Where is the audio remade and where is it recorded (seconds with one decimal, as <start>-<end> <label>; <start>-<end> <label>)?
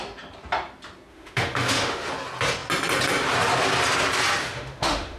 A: 0.0-1.1 recorded; 1.1-2.1 remade; 2.1-4.4 recorded; 4.4-5.2 remade